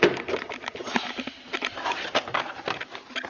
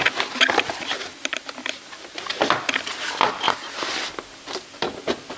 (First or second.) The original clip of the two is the second